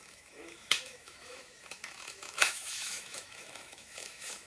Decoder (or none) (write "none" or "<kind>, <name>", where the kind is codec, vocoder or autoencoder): autoencoder, DAC-VAE